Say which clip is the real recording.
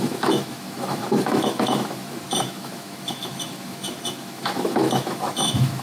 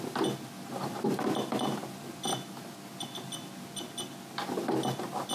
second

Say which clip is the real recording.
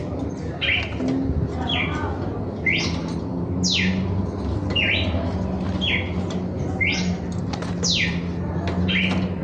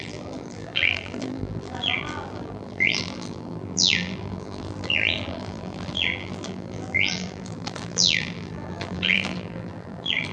first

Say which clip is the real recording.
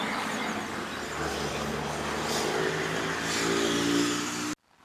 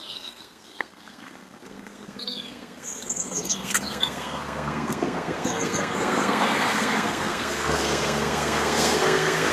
first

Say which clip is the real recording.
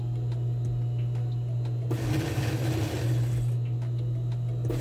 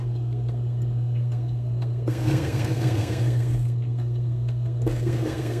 first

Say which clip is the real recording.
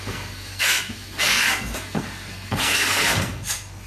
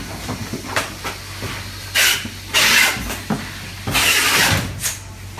second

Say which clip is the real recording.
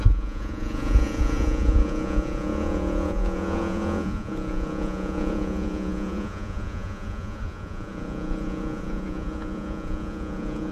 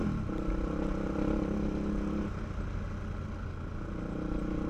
second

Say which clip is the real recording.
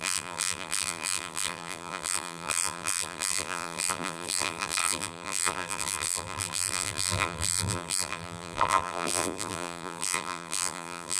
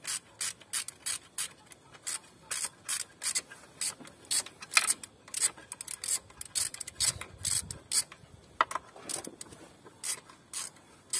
second